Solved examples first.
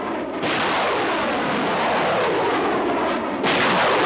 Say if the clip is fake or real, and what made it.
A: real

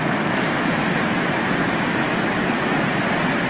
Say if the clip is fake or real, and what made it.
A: real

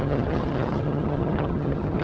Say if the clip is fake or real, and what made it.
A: fake, vocoder, HiFi-GAN